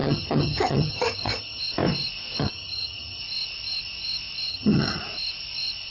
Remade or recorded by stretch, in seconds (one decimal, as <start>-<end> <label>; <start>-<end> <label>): 0.0-1.6 remade; 1.6-2.4 recorded; 2.4-3.2 remade; 3.2-4.5 recorded; 4.5-5.0 remade; 5.0-5.9 recorded